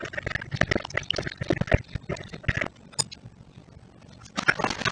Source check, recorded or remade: recorded